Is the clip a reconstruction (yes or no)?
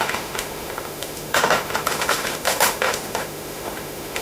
yes